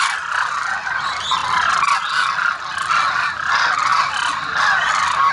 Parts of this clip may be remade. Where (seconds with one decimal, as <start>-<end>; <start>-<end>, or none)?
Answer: none